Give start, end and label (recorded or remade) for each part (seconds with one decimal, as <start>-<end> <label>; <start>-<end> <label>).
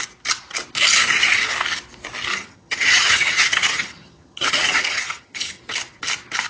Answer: 0.0-2.3 recorded; 2.3-5.6 remade; 5.6-6.5 recorded